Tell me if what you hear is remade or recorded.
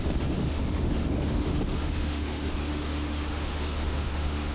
remade